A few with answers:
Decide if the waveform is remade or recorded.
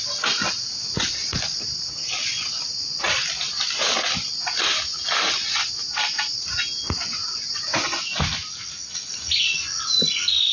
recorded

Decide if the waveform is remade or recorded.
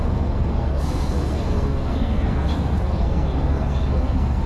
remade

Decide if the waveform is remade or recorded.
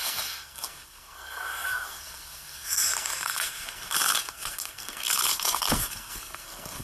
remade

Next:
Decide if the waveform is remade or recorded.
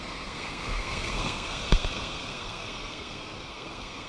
remade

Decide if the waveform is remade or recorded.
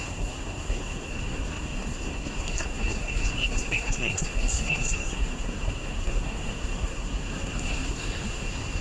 remade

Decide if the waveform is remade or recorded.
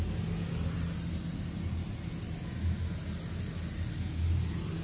recorded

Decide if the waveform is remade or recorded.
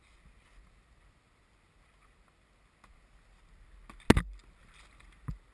recorded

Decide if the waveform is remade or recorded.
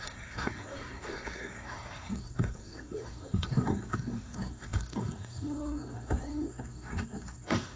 remade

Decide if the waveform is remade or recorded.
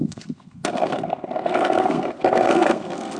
remade